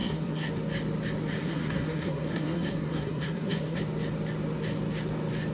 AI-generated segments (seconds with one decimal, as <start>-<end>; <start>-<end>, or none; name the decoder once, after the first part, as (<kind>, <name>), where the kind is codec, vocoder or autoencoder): 0.0-0.5 (codec, SNAC); 1.4-3.8